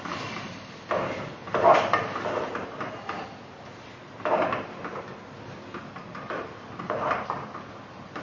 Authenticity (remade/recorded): recorded